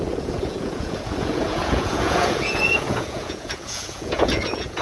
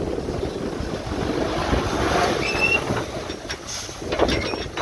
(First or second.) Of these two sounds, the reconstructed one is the first